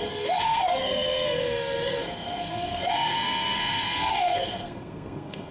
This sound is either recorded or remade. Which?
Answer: remade